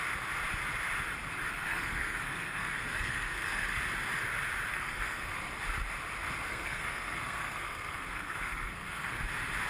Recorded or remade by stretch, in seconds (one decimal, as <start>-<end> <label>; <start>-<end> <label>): 0.0-1.5 recorded; 1.5-3.8 remade; 3.8-4.7 recorded; 4.7-5.4 remade; 5.4-6.5 recorded; 6.5-9.2 remade; 9.2-9.7 recorded